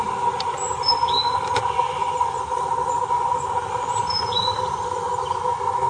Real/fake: real